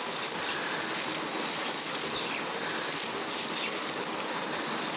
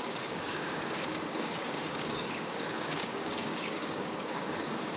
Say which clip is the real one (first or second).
first